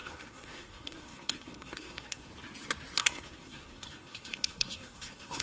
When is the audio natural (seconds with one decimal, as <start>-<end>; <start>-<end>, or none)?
2.3-3.0